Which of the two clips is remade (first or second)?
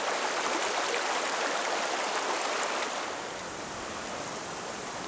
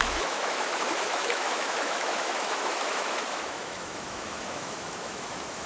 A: second